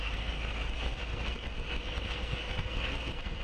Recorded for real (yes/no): no